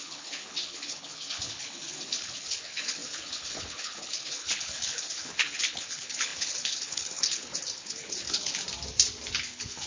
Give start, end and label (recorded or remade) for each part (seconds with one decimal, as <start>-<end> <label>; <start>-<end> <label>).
0.0-8.6 remade; 8.6-9.4 recorded; 9.4-9.9 remade